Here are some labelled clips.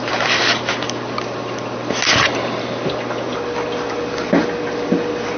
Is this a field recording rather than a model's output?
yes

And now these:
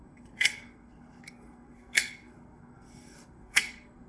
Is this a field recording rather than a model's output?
no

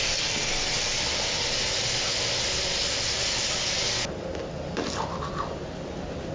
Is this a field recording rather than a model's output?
yes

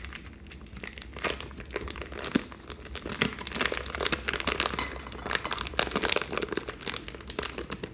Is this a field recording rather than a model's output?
yes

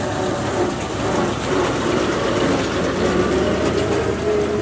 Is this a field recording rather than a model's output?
yes